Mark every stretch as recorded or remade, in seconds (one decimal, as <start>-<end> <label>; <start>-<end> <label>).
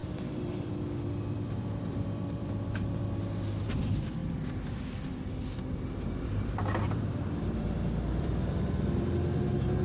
0.0-3.1 remade; 3.1-4.2 recorded; 4.2-8.6 remade; 8.6-9.8 recorded